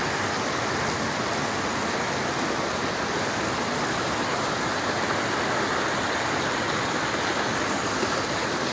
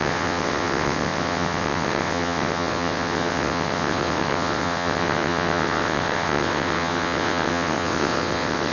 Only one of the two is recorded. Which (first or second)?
first